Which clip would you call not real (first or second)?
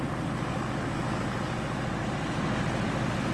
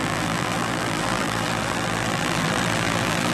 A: second